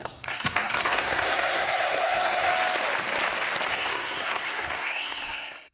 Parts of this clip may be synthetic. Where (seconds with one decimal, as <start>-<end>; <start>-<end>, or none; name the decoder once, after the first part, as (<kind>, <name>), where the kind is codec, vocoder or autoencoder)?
0.0-2.5 (codec, SNAC); 3.7-5.7